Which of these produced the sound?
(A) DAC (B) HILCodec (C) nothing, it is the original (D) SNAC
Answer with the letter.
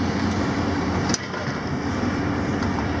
C